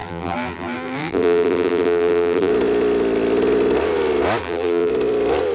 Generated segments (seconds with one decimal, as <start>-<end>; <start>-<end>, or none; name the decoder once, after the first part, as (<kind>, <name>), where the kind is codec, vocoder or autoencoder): 0.0-2.5 (vocoder, BigVGAN v2); 4.4-4.9

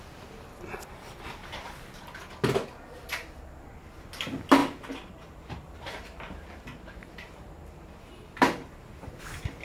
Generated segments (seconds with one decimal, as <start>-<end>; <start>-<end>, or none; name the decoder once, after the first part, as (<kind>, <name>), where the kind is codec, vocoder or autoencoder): 4.6-9.2 (vocoder, BigVGAN v2)

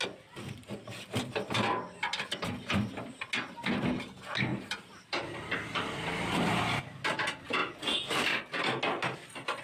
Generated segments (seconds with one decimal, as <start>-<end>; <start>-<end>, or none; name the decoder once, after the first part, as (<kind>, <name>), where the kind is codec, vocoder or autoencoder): 4.5-6.5 (vocoder, BigVGAN v2); 7.6-8.8